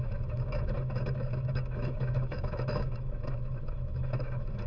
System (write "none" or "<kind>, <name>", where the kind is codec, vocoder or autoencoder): autoencoder, DAC-VAE